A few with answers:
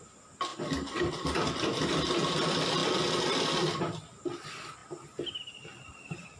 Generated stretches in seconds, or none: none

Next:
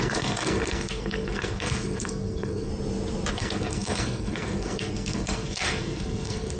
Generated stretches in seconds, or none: 0.0-2.7; 3.3-6.6

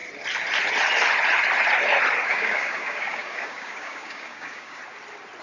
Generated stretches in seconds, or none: 2.3-4.8

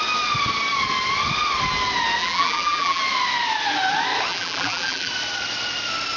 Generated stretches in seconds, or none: 2.2-3.0; 4.3-5.1